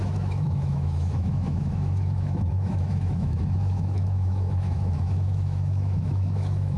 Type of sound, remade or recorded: remade